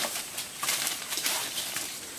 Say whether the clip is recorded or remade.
remade